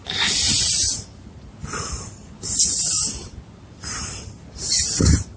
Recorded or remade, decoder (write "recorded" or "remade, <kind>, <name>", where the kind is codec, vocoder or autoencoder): recorded